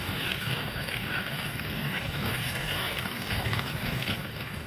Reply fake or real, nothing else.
fake